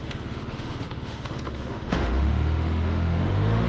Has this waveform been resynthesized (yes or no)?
yes